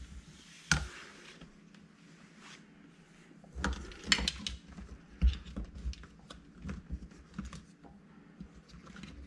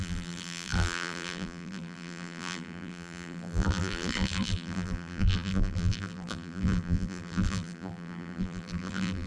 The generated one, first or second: second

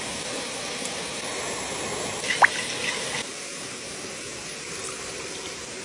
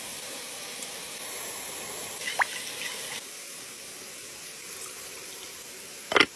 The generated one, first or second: second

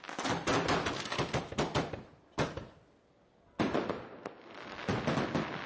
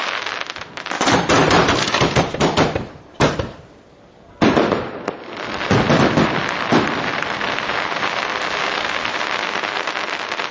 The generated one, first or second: second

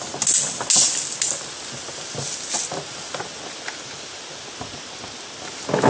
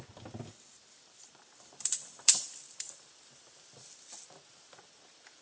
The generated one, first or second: second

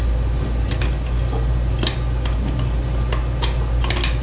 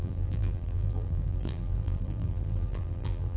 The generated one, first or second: second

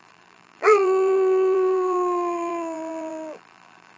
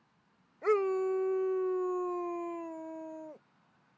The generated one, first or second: first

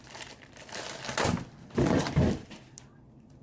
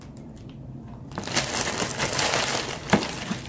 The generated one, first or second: second